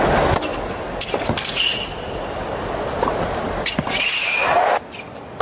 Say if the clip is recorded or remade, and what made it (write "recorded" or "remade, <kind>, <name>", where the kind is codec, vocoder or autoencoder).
recorded